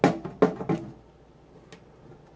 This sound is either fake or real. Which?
real